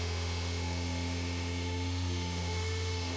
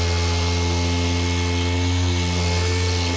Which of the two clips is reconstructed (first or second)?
first